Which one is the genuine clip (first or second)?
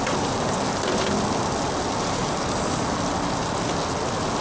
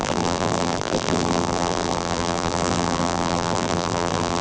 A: first